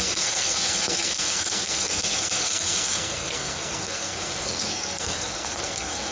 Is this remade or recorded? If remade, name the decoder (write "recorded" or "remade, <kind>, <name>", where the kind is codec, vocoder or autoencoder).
remade, codec, SNAC